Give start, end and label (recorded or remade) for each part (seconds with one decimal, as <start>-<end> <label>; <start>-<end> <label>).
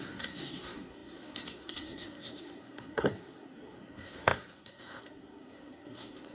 0.0-6.3 remade